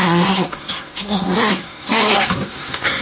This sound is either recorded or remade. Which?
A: remade